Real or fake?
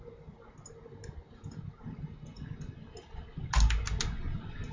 real